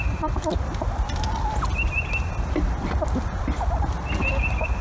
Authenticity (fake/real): real